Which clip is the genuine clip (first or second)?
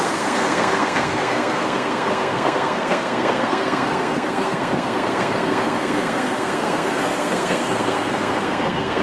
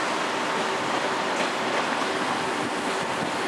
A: second